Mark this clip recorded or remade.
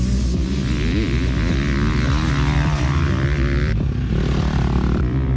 recorded